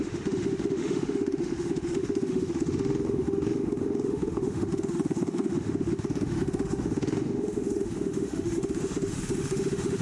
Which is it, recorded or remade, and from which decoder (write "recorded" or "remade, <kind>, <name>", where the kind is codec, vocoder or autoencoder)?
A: remade, autoencoder, DAC-VAE